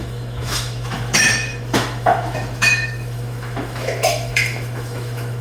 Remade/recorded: remade